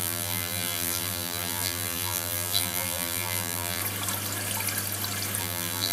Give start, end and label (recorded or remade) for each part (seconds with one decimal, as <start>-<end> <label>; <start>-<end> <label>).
0.0-3.8 remade; 3.8-5.4 recorded; 5.4-5.9 remade